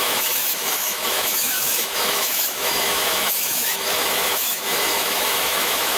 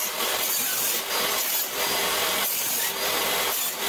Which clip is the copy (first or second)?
first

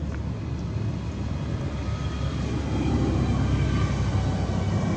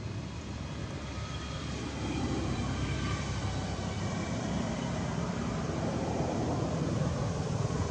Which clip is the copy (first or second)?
second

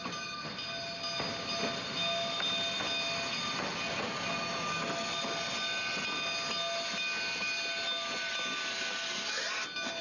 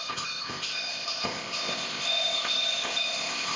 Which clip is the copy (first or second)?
second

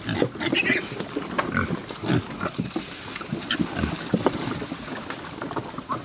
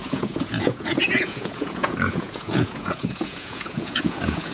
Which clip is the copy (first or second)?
second